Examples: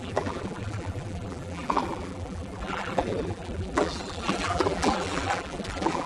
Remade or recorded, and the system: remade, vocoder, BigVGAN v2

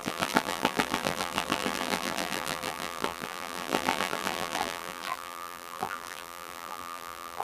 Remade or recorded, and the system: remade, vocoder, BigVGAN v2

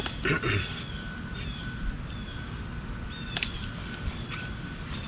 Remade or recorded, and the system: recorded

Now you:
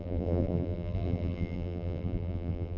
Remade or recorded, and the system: remade, vocoder, BigVGAN v2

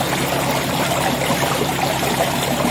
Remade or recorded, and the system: recorded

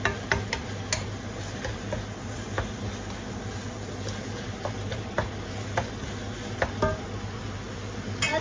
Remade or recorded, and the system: recorded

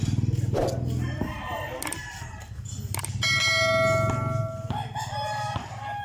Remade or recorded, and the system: recorded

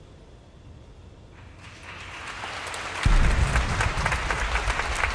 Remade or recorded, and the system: recorded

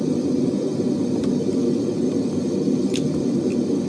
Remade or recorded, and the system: remade, vocoder, BigVGAN v2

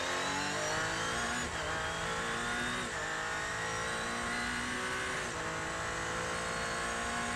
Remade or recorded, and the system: recorded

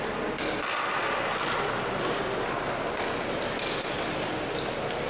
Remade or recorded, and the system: recorded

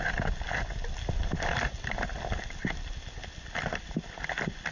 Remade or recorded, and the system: recorded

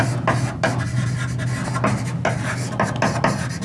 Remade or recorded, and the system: recorded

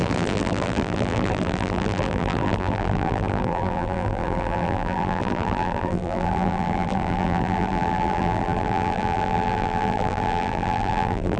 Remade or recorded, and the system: remade, vocoder, BigVGAN v2